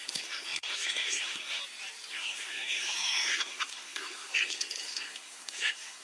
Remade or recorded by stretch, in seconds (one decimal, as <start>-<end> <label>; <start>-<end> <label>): 0.0-1.6 remade; 1.6-2.1 recorded; 2.1-6.0 remade